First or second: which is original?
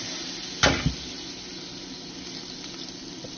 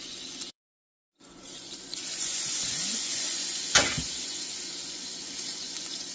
first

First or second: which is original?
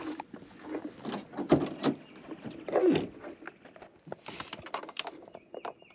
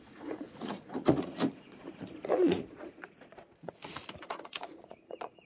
first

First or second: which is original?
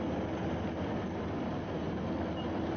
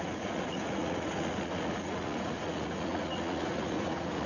first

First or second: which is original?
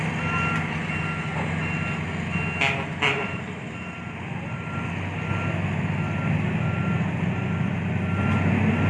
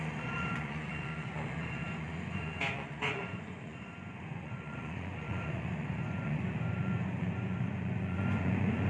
first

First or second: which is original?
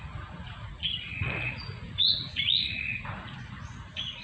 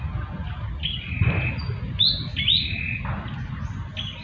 second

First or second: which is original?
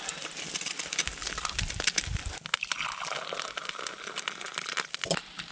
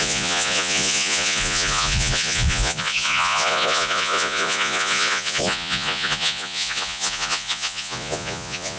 first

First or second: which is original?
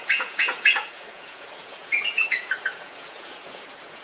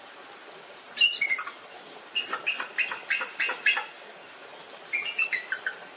second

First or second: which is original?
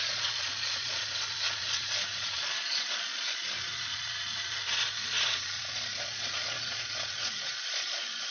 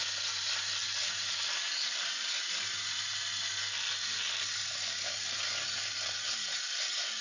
second